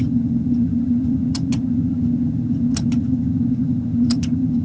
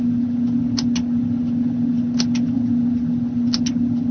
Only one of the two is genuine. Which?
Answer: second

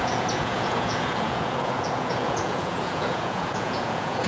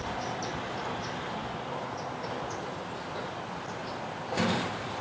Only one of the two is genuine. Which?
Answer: second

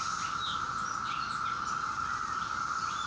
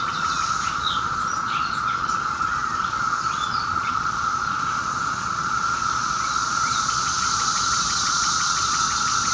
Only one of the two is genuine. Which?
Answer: first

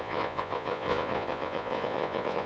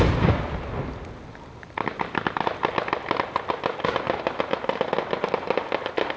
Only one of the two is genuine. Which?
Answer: second